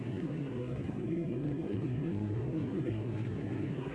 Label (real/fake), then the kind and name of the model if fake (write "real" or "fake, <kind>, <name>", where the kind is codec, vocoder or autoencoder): fake, codec, SNAC